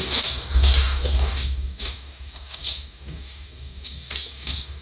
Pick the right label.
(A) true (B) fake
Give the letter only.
B